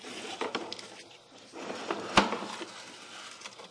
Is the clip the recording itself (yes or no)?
yes